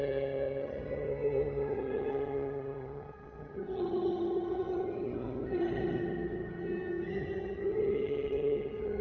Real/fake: fake